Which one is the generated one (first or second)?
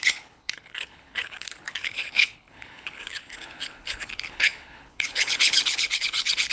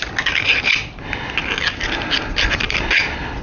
first